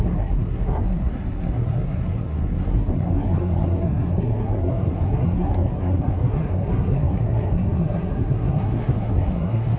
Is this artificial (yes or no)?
yes